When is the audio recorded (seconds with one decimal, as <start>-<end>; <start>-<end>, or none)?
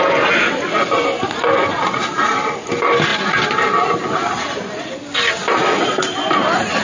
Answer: 0.0-6.8